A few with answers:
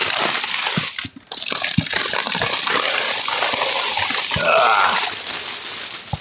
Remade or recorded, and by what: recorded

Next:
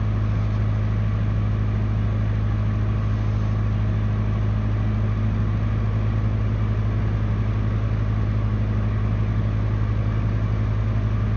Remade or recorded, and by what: recorded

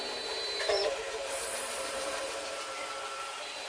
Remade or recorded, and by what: remade, vocoder, BigVGAN v2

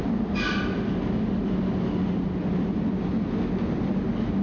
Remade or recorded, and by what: recorded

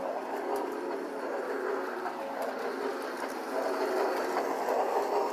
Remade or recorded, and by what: recorded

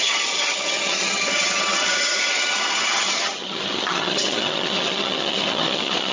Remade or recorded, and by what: remade, vocoder, HiFi-GAN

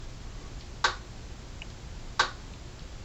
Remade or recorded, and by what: recorded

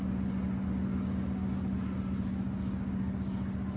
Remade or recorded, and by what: recorded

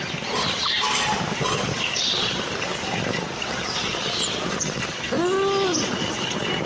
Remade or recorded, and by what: recorded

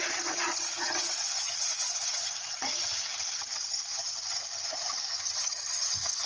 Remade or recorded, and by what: remade, vocoder, HiFi-GAN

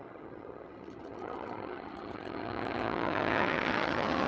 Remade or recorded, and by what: remade, vocoder, HiFi-GAN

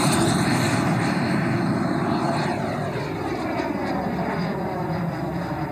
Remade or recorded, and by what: recorded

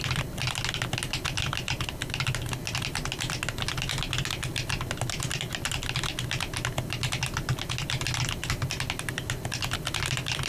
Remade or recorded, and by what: recorded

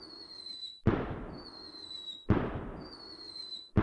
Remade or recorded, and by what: recorded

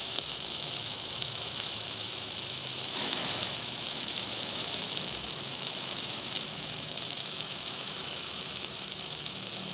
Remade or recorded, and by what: remade, autoencoder, DAC-VAE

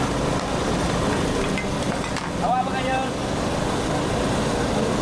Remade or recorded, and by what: recorded